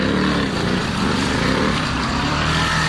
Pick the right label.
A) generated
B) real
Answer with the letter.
A